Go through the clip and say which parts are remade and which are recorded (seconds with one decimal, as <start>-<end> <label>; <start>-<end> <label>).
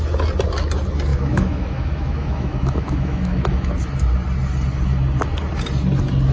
0.0-1.1 recorded; 1.1-3.7 remade; 3.7-6.3 recorded